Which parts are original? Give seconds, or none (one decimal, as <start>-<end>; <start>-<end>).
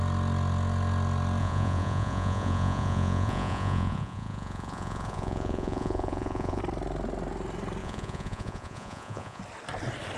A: 0.0-1.4; 6.6-7.8; 9.4-10.2